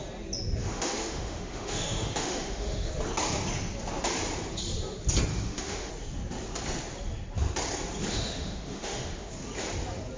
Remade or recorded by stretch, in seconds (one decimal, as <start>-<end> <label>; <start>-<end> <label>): 0.0-0.6 recorded; 0.6-2.9 remade; 2.9-5.3 recorded; 5.3-5.9 remade; 5.9-8.1 recorded; 8.1-9.3 remade; 9.3-10.2 recorded